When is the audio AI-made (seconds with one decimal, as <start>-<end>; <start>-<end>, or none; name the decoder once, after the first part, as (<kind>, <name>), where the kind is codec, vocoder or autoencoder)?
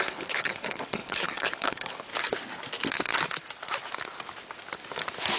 0.0-2.1 (codec, HILCodec)